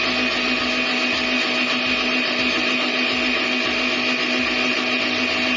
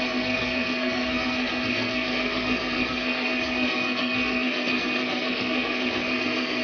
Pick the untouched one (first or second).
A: first